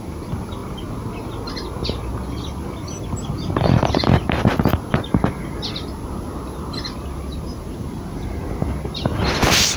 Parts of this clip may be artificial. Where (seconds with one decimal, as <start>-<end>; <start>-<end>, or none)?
none